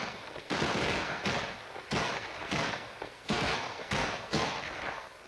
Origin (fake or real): fake